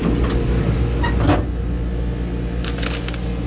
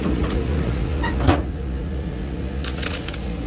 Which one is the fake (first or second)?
second